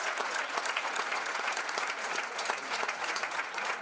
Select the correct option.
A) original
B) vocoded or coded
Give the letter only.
B